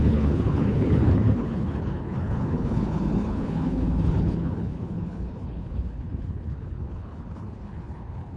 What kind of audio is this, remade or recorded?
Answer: remade